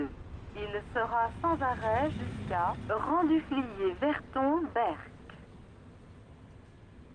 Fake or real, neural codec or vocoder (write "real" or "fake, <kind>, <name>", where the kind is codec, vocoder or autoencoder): real